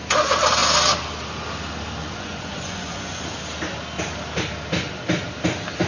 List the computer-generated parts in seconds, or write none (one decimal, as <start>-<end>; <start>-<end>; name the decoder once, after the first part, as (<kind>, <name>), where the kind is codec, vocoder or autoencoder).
2.0-3.2 (vocoder, Vocos)